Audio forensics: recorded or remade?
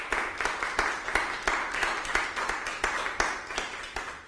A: recorded